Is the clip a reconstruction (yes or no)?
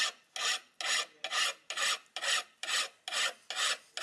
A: no